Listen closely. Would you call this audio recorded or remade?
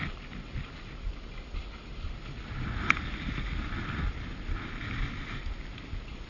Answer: recorded